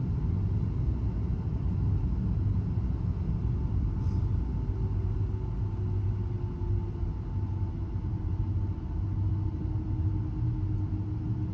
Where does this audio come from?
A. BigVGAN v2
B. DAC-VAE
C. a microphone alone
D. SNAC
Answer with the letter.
C